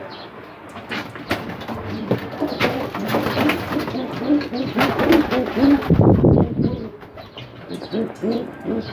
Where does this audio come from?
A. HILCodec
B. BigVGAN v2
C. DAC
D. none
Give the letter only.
D